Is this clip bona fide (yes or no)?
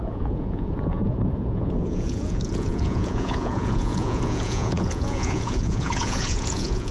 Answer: no